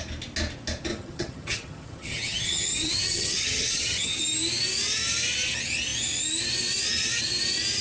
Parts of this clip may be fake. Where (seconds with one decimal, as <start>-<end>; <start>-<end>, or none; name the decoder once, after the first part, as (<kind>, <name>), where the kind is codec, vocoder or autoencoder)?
0.9-4.2 (vocoder, HiFi-GAN)